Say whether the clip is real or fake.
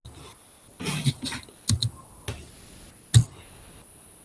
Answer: real